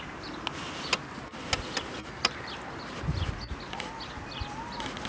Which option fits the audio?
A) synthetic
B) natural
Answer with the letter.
B